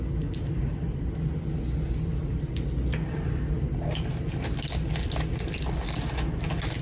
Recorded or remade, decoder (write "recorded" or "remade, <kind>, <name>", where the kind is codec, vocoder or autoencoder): recorded